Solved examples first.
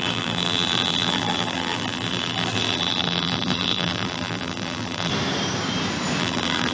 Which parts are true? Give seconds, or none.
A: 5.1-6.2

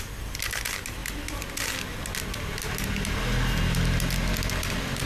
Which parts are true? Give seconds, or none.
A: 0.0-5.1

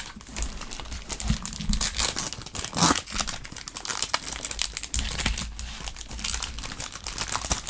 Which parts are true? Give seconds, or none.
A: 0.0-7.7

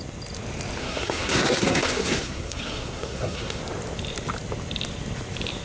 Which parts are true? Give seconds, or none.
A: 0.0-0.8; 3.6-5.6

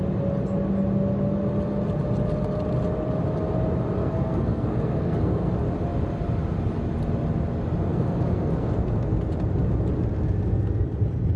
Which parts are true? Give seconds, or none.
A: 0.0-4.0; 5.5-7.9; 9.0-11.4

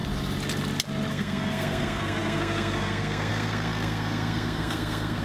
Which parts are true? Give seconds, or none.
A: 0.0-1.1

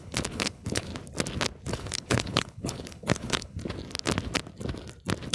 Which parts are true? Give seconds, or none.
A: 0.9-1.7; 3.6-5.3